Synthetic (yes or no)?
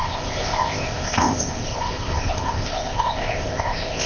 yes